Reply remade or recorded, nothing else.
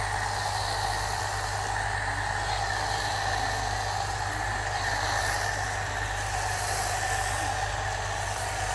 recorded